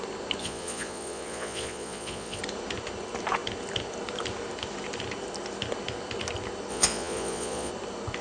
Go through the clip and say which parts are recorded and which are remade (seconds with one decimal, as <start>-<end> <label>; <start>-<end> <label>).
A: 0.0-0.4 recorded; 0.4-2.4 remade; 2.4-6.7 recorded; 6.7-7.7 remade; 7.7-8.2 recorded

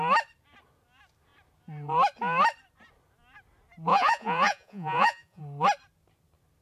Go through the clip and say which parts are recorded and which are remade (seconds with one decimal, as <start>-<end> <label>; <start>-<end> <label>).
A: 0.0-3.9 recorded; 3.9-5.4 remade; 5.4-6.6 recorded

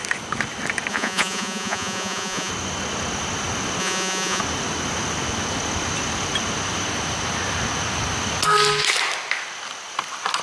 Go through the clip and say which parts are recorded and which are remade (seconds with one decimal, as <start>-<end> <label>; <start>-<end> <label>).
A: 0.0-0.9 recorded; 0.9-2.5 remade; 2.5-3.8 recorded; 3.8-4.4 remade; 4.4-10.4 recorded

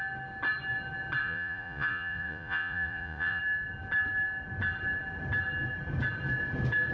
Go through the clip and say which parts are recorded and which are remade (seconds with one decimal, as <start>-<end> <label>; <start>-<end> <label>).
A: 0.0-1.2 recorded; 1.2-3.4 remade; 3.4-6.9 recorded